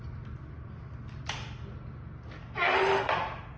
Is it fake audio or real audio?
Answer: real